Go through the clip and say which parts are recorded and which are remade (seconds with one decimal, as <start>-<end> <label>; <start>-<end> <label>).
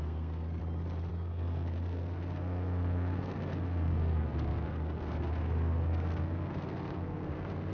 0.0-0.6 remade; 0.6-1.1 recorded; 1.1-7.7 remade